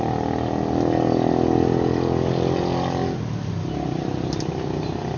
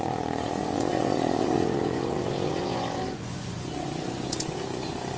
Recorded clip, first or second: first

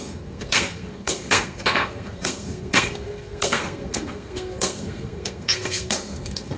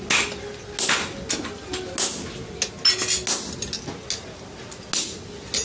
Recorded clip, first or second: second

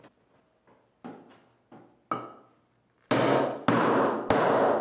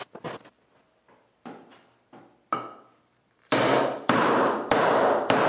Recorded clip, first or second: first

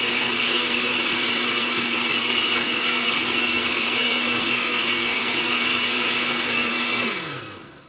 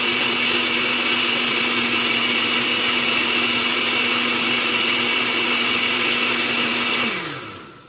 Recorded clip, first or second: second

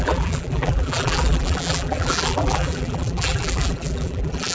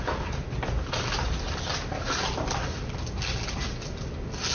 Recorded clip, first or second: second